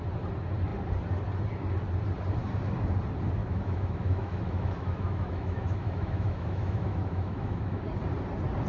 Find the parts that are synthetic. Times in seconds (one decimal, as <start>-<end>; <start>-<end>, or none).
3.4-7.8